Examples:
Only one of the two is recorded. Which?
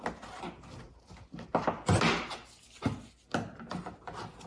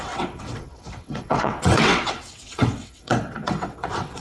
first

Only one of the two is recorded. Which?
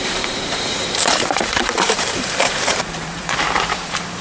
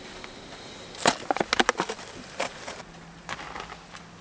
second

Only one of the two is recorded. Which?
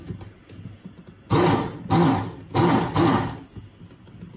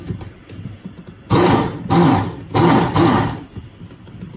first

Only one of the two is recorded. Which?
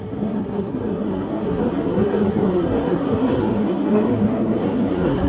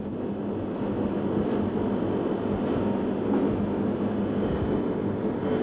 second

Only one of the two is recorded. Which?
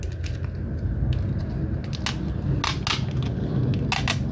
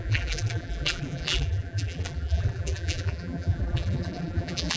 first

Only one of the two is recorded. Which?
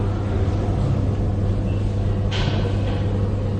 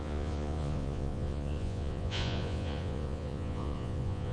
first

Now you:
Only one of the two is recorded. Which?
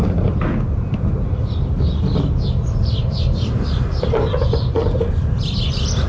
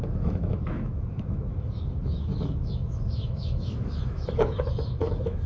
first